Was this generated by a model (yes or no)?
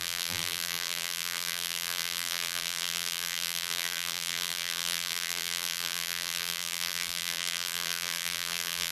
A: yes